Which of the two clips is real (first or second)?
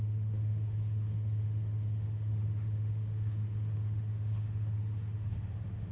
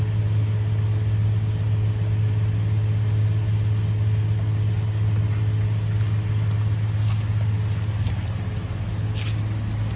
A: second